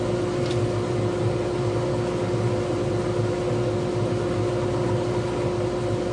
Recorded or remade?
recorded